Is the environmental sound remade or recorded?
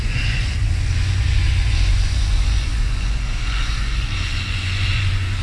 remade